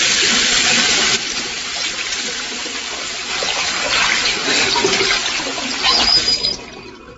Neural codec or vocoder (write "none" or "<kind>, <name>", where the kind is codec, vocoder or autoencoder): none